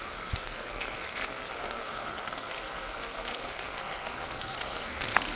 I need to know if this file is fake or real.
fake